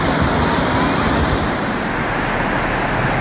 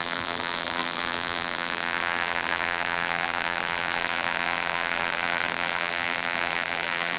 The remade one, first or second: second